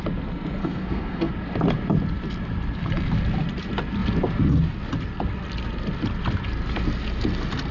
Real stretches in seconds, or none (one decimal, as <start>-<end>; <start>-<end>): 0.0-0.6; 1.3-7.7